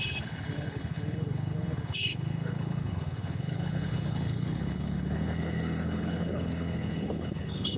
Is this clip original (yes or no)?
no